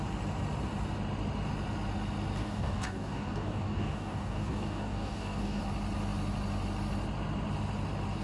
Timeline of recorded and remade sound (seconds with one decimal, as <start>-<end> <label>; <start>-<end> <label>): 0.0-2.4 recorded; 2.4-5.6 remade; 5.6-8.2 recorded